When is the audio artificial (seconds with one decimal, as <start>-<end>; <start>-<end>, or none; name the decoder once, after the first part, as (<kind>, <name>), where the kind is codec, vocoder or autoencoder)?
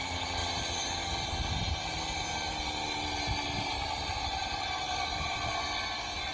none